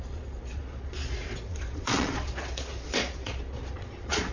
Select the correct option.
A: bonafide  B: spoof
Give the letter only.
B